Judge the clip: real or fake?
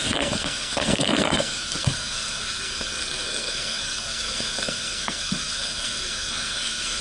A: fake